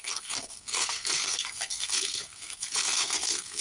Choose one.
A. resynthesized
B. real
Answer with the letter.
A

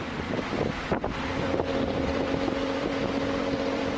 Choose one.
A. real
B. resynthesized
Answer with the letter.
B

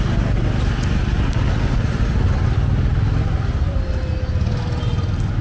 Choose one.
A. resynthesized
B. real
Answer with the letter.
B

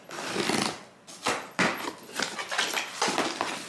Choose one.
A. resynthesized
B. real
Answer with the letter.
B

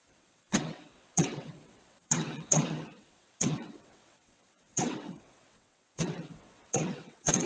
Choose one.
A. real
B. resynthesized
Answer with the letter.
B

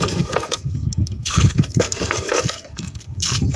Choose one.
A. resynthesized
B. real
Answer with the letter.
A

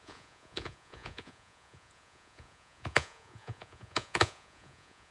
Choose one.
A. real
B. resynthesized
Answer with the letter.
B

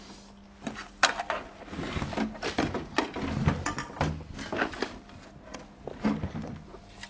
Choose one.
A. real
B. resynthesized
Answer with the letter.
A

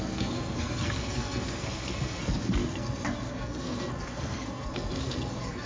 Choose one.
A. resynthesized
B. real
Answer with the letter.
A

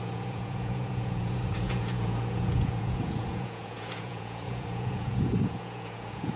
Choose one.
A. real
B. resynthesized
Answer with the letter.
B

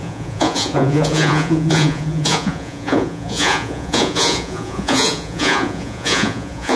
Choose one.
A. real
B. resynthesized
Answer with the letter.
B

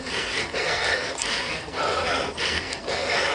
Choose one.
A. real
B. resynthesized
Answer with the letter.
B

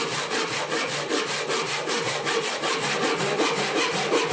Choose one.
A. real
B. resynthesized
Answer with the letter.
A